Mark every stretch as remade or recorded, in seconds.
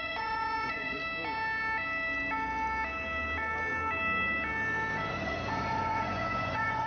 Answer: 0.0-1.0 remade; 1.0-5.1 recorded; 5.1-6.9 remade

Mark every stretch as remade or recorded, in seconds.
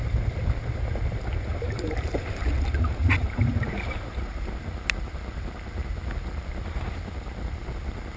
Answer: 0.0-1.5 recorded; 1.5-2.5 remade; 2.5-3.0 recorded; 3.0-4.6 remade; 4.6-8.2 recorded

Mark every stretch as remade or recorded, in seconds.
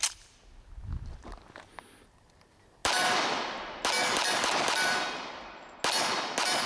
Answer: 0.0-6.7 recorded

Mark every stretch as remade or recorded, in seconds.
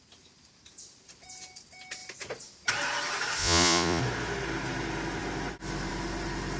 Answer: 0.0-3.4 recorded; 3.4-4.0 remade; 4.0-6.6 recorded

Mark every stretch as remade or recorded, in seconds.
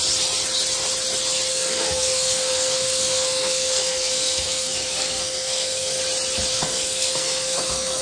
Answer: 0.0-1.5 recorded; 1.5-6.0 remade; 6.0-6.5 recorded; 6.5-8.0 remade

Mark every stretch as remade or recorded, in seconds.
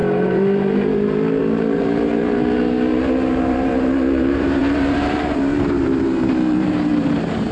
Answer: 0.0-7.5 remade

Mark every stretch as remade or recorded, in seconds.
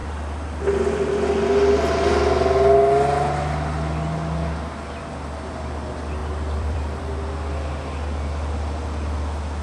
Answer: 0.0-6.2 recorded; 6.2-7.0 remade; 7.0-9.6 recorded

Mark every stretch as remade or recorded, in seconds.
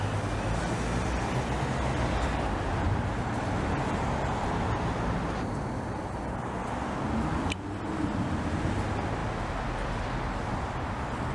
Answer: 0.0-11.3 recorded